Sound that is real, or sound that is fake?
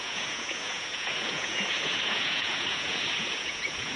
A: fake